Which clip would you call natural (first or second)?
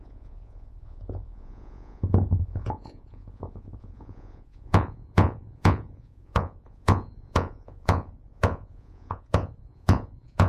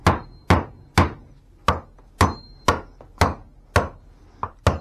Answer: second